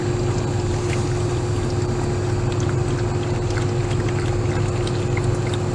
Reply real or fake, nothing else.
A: real